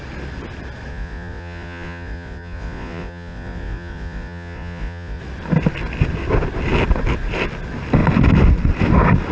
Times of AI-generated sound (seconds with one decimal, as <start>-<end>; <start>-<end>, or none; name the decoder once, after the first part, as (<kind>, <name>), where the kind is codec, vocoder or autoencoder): 0.9-5.2 (vocoder, Vocos)